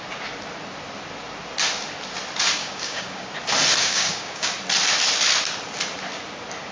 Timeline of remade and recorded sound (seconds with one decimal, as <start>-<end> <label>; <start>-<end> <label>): 0.0-2.6 recorded; 2.6-3.3 remade; 3.3-3.8 recorded; 3.8-4.5 remade; 4.5-6.7 recorded